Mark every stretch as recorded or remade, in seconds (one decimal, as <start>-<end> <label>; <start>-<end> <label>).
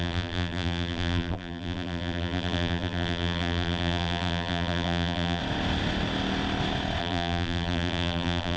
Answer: 0.0-5.4 remade; 5.4-7.0 recorded; 7.0-8.6 remade